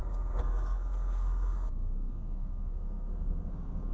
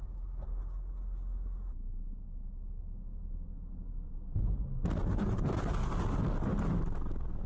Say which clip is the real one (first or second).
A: second